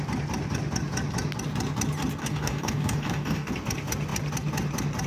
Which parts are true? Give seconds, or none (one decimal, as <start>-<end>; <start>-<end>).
0.0-2.2; 3.5-5.1